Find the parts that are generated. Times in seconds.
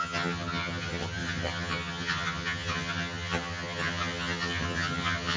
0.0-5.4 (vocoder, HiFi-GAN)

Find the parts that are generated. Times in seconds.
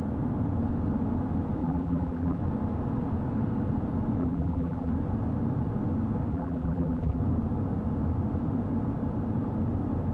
1.6-2.4 (vocoder, BigVGAN v2); 4.2-4.9; 6.3-7.2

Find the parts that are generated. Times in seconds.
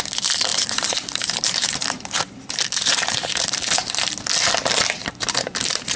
0.5-4.1 (vocoder, BigVGAN v2); 5.0-6.0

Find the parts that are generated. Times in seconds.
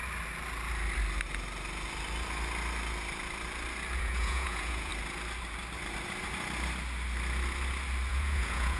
4.0-4.9 (vocoder, Vocos); 8.1-8.8